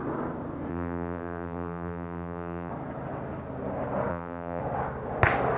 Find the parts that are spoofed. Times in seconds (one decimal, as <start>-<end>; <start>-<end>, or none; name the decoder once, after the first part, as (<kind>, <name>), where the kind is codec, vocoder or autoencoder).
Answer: 0.7-2.7 (vocoder, BigVGAN v2); 4.1-4.6